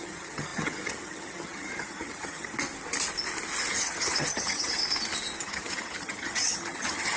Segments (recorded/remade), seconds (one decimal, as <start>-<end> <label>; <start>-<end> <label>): 0.0-2.5 remade; 2.5-3.7 recorded; 3.7-4.8 remade; 4.8-5.4 recorded; 5.4-7.2 remade